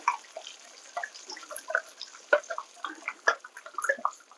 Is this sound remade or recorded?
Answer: recorded